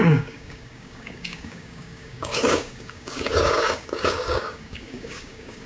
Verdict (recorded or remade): remade